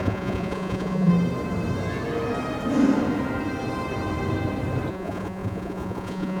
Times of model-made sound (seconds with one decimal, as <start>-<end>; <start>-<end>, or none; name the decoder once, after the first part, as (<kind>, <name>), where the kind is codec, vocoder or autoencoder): 0.0-1.1 (vocoder, Vocos); 4.9-6.4